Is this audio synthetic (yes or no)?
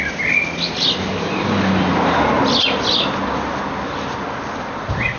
no